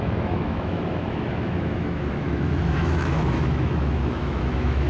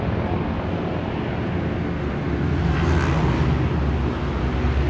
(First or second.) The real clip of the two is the second